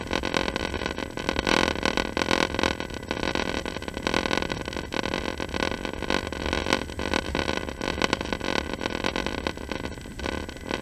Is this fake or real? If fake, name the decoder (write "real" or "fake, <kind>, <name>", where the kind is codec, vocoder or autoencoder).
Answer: real